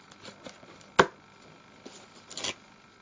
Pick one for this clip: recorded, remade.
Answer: recorded